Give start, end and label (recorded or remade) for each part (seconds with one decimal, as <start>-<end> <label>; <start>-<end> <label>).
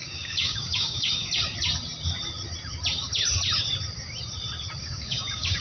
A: 0.0-1.3 remade; 1.3-4.8 recorded; 4.8-5.6 remade